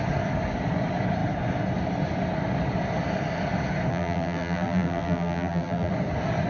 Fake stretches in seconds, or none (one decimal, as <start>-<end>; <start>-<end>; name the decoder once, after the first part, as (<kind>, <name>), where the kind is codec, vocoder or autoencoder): 3.9-5.9 (vocoder, BigVGAN v2)